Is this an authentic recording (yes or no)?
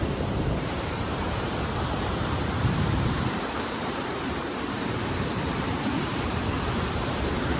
no